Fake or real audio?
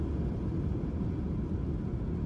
real